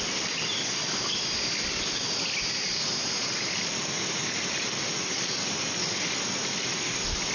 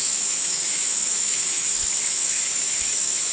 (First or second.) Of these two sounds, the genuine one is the first